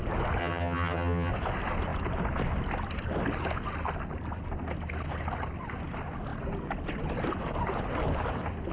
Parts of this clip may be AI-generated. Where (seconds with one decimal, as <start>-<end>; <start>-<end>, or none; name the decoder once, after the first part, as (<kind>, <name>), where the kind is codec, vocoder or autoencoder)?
0.4-1.3 (vocoder, HiFi-GAN)